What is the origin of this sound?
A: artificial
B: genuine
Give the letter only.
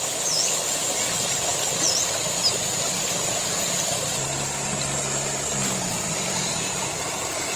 B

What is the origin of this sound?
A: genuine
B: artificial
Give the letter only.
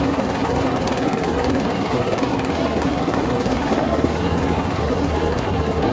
B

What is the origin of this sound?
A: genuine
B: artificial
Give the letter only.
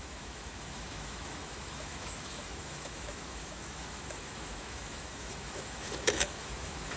B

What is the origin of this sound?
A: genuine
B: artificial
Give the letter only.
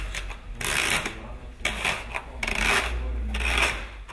A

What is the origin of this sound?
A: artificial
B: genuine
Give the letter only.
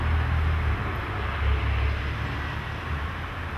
B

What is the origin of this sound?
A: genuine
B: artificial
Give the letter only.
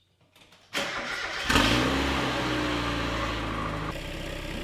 A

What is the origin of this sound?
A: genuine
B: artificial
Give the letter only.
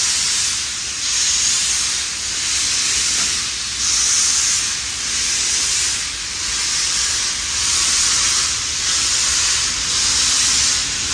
A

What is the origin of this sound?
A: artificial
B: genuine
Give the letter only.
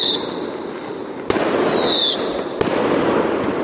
B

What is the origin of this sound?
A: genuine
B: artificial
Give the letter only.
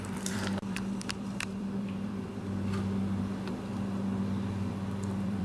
B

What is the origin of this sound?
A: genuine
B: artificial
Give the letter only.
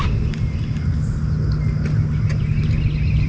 A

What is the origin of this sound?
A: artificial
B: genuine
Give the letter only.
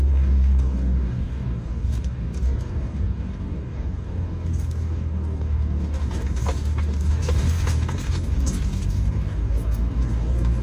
A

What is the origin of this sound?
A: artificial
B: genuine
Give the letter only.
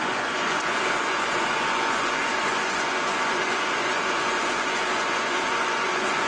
A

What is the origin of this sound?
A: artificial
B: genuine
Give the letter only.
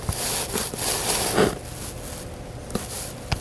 B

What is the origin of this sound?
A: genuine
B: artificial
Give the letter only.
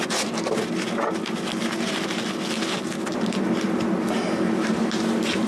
A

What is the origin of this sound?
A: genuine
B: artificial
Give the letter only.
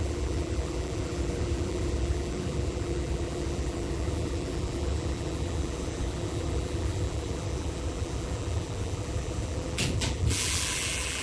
B